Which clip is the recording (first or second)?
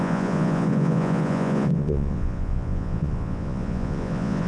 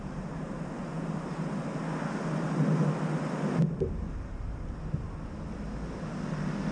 second